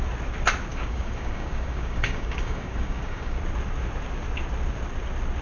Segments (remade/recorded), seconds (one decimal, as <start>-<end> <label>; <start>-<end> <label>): 0.0-0.7 recorded; 0.7-3.4 remade; 3.4-5.4 recorded